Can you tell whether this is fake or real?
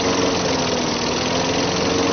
real